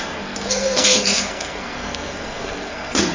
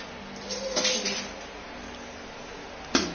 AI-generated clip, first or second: first